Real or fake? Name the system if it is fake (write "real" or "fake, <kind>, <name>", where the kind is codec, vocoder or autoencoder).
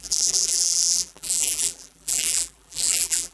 fake, vocoder, BigVGAN v2